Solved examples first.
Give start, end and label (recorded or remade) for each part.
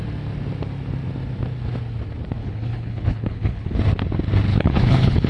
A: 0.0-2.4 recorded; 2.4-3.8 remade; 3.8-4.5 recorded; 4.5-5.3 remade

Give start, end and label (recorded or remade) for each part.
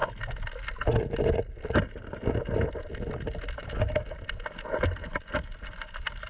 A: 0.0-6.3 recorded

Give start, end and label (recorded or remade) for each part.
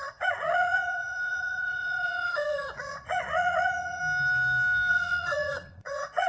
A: 0.0-4.0 remade; 4.0-4.9 recorded; 4.9-6.3 remade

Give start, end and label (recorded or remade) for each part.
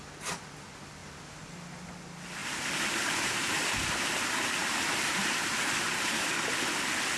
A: 0.0-1.0 recorded; 1.0-1.9 remade; 1.9-2.4 recorded; 2.4-4.0 remade; 4.0-4.6 recorded; 4.6-6.3 remade; 6.3-7.2 recorded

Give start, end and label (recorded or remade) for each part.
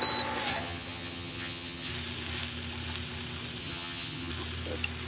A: 0.0-0.5 recorded; 0.5-1.9 remade; 1.9-3.6 recorded; 3.6-4.3 remade; 4.3-5.1 recorded